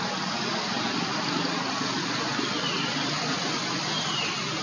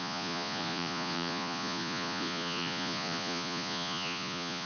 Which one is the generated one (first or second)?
second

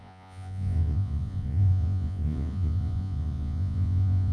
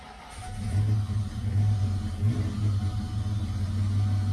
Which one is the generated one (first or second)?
first